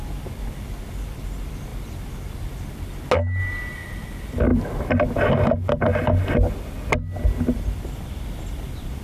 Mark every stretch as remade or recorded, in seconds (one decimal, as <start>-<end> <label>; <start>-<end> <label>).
0.0-9.0 recorded